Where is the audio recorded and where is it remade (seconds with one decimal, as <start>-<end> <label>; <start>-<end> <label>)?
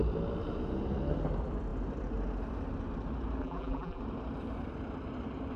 0.0-3.4 recorded; 3.4-4.0 remade; 4.0-5.6 recorded